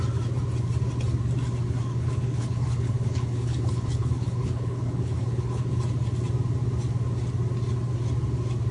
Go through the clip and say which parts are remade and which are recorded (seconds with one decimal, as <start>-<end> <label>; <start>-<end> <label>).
0.0-1.9 recorded; 1.9-5.8 remade; 5.8-8.7 recorded